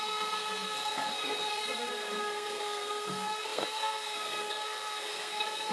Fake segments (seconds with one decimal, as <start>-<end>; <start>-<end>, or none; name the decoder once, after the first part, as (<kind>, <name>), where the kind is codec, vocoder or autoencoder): 0.0-5.7 (codec, SNAC)

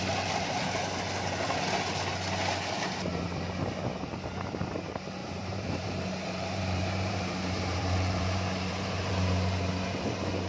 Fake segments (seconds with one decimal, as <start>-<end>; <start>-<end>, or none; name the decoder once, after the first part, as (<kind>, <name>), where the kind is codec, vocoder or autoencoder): 5.2-9.1 (vocoder, BigVGAN v2)

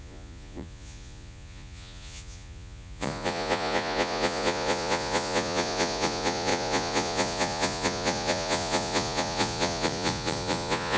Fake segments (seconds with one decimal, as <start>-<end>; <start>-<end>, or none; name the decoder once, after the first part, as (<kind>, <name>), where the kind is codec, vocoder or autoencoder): 0.0-11.0 (vocoder, Vocos)

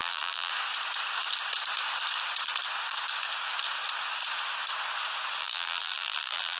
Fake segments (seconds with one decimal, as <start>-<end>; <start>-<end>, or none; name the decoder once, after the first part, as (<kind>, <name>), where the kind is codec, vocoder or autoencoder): 0.0-0.5 (vocoder, BigVGAN v2); 5.4-6.6